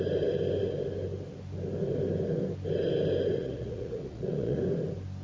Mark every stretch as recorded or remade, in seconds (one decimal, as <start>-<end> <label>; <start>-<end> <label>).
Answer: 0.0-3.4 recorded; 3.4-4.6 remade; 4.6-5.2 recorded